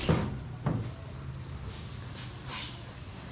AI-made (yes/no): no